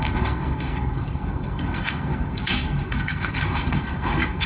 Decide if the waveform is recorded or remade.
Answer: remade